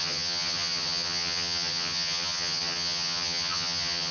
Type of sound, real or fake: fake